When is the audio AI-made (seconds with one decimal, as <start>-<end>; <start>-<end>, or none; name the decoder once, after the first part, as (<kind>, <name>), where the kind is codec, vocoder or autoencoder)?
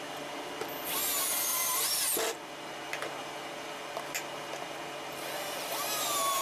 none